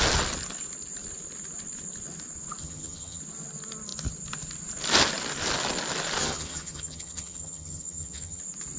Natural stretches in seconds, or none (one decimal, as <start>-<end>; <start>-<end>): 0.0-2.6; 3.2-6.2; 8.4-8.8